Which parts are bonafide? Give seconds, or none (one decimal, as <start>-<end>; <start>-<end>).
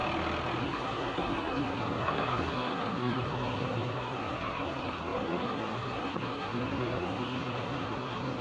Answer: 0.0-0.6